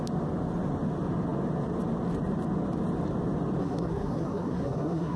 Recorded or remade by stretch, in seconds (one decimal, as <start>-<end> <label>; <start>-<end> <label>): 0.0-3.6 recorded; 3.6-5.2 remade